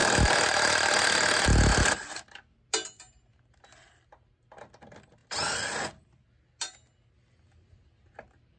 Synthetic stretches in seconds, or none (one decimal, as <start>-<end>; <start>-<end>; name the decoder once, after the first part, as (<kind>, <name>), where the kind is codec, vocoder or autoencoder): none